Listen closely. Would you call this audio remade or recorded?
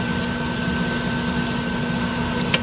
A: recorded